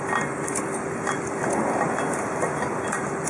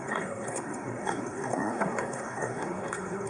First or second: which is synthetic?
second